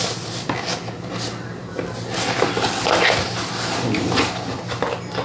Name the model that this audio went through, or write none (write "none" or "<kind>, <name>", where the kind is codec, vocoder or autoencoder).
none